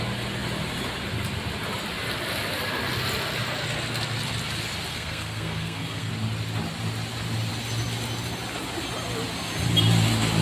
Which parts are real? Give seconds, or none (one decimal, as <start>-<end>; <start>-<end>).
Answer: 0.0-4.9; 6.1-10.4